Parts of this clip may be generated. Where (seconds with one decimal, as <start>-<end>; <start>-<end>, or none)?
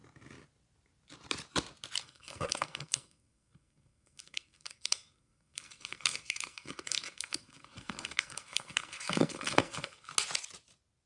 2.0-10.1